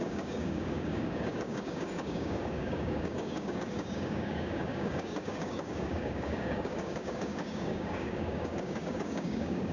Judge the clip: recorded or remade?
remade